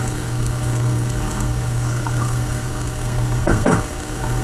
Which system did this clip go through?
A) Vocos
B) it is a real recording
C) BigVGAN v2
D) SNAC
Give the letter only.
D